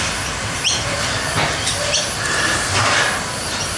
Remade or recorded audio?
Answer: recorded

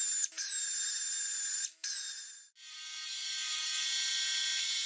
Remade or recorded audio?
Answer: recorded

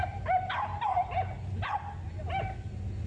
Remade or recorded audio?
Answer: recorded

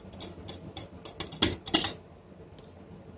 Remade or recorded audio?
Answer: recorded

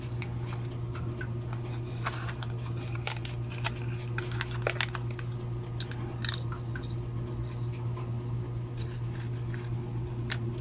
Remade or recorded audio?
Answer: recorded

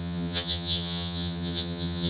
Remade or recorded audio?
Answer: remade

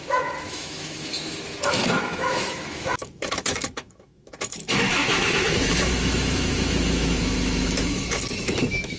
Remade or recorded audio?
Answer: remade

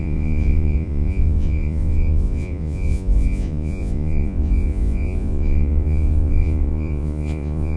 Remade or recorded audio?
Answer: remade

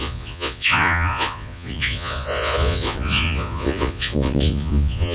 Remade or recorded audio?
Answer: remade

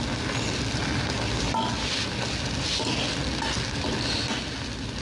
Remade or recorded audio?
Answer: recorded